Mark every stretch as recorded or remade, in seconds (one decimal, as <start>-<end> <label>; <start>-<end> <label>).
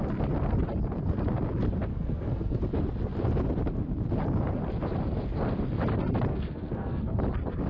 0.0-1.9 recorded; 1.9-2.6 remade; 2.6-6.3 recorded; 6.3-7.2 remade; 7.2-7.7 recorded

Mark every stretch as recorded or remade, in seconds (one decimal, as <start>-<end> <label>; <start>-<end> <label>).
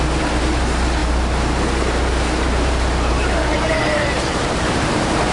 0.0-5.3 remade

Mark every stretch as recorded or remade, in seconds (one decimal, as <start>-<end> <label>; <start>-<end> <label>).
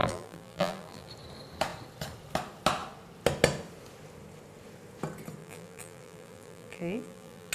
0.0-1.1 remade; 1.1-5.4 recorded; 5.4-7.5 remade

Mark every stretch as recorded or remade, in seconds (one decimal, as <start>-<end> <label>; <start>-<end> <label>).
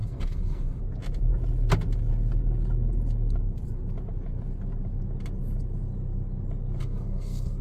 0.0-0.8 remade; 0.8-6.8 recorded; 6.8-7.6 remade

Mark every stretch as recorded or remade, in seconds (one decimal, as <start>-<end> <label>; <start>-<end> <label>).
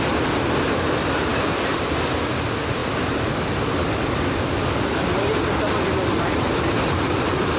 0.0-7.6 recorded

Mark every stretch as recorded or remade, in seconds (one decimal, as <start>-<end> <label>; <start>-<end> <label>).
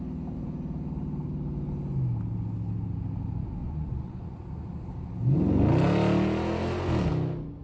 0.0-3.6 recorded; 3.6-4.4 remade; 4.4-7.6 recorded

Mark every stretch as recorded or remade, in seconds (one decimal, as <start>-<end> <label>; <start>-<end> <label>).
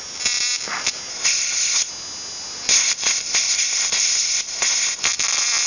0.0-1.1 recorded; 1.1-1.9 remade; 1.9-2.7 recorded; 2.7-5.0 remade; 5.0-5.7 recorded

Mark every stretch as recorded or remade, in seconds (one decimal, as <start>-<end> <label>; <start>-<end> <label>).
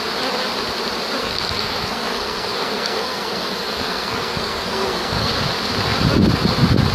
0.0-1.2 recorded; 1.2-5.3 remade; 5.3-6.9 recorded